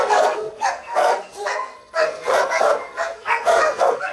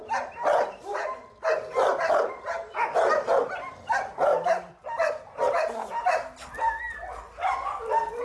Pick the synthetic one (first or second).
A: first